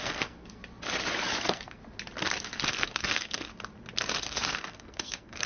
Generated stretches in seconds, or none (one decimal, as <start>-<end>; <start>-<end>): 0.0-0.6; 1.4-1.8; 2.7-3.5; 4.2-5.5

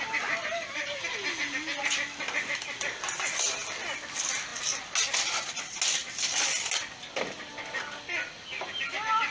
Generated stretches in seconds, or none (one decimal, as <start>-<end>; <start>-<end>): none

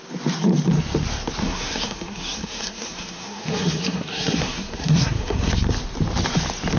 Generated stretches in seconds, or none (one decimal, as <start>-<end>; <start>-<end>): 1.4-5.5